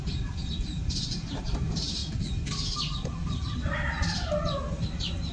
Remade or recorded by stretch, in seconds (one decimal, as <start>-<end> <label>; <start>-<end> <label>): 0.0-2.0 remade; 2.0-5.3 recorded